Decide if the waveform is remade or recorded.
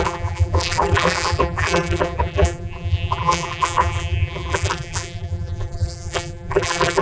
remade